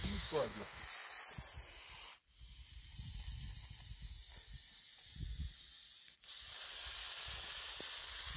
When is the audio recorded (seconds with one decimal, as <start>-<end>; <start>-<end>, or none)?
0.8-8.4